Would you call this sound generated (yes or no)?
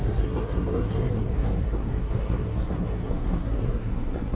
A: yes